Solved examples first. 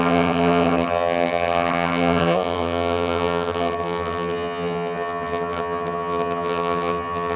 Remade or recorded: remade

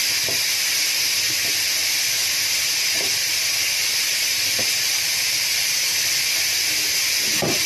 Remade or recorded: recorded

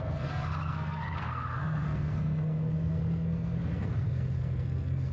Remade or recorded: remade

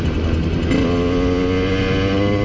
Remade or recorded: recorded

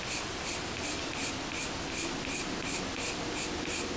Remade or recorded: recorded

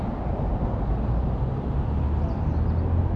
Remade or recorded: recorded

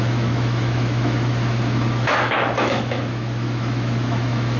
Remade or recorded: remade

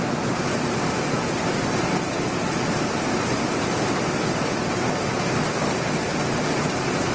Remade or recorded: recorded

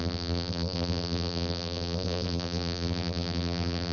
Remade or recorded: remade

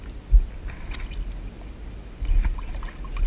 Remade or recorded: recorded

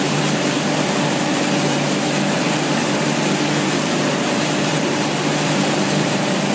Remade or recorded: remade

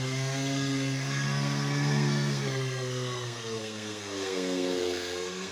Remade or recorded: remade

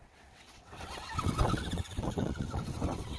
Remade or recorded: remade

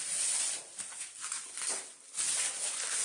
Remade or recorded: recorded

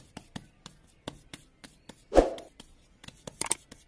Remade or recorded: recorded